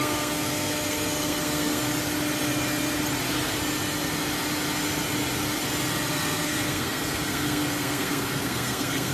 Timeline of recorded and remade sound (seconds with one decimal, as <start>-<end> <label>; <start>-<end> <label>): 0.0-1.8 remade; 1.8-6.1 recorded; 6.1-9.1 remade